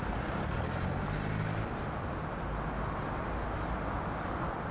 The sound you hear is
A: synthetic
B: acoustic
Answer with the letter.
B